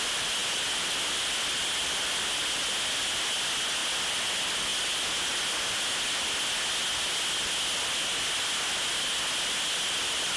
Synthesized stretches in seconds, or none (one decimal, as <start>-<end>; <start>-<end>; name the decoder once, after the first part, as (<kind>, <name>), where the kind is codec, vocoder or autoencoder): none